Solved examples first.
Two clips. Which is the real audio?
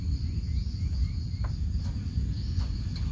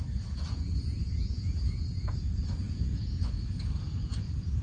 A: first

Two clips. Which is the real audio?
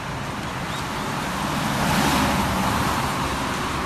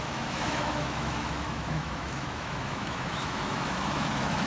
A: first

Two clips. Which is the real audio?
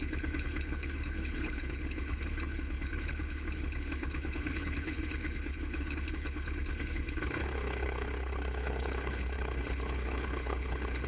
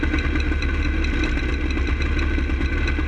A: second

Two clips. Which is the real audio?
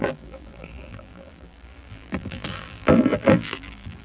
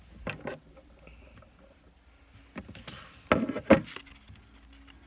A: second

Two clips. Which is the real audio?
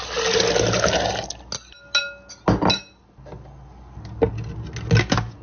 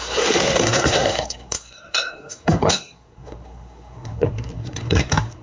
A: first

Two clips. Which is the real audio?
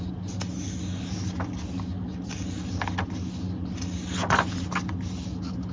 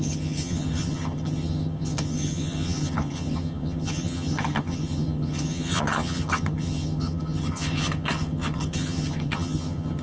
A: first